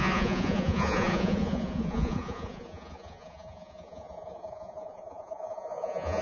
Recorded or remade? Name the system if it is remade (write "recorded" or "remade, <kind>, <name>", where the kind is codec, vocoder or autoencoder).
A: remade, vocoder, Vocos